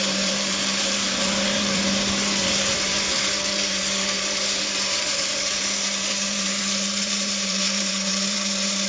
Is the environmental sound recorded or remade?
remade